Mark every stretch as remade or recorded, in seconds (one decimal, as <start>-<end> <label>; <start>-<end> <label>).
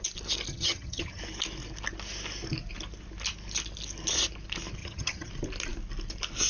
0.0-0.5 recorded; 0.5-1.2 remade; 1.2-4.8 recorded; 4.8-5.3 remade; 5.3-6.5 recorded